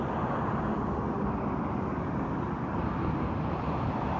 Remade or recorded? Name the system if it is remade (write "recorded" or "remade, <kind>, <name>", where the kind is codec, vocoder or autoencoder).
recorded